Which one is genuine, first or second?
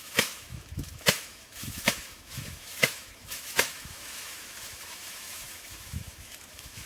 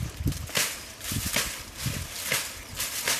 second